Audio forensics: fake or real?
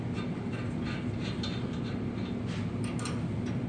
real